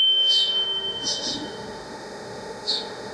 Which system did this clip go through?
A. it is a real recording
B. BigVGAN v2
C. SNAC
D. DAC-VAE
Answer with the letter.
D